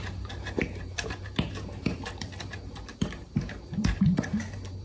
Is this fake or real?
fake